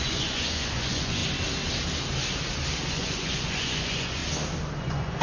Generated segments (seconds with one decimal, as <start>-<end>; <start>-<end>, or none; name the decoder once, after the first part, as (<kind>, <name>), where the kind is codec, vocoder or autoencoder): 0.0-1.2 (vocoder, Vocos); 2.9-4.2; 4.8-5.2